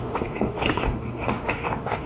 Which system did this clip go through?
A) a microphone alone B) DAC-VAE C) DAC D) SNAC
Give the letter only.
B